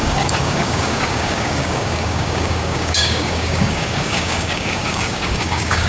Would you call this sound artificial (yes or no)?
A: yes